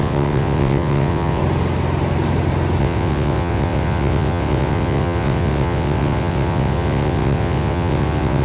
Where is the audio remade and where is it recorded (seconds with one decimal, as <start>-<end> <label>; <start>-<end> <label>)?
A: 0.0-1.4 remade; 1.4-2.8 recorded; 2.8-8.4 remade

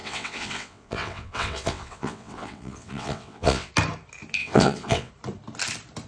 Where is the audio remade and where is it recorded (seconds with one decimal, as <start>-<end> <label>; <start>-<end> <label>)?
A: 0.0-3.7 remade; 3.7-4.4 recorded; 4.4-5.1 remade; 5.1-6.1 recorded

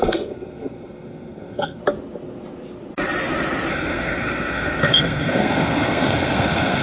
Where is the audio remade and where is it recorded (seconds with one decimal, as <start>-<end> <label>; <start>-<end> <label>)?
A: 0.0-1.8 remade; 1.8-3.7 recorded; 3.7-6.8 remade

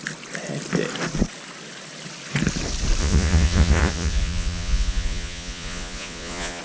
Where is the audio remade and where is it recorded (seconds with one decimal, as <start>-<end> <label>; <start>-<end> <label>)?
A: 0.0-3.0 recorded; 3.0-6.6 remade

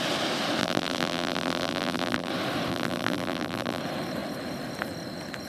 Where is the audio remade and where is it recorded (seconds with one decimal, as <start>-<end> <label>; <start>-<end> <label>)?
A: 0.0-0.6 recorded; 0.6-2.3 remade; 2.3-2.7 recorded; 2.7-3.8 remade; 3.8-5.5 recorded